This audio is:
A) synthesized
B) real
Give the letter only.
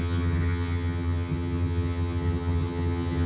A